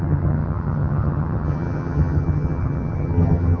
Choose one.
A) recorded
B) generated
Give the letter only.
B